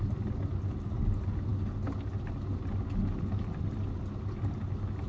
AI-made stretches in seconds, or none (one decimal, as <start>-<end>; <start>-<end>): none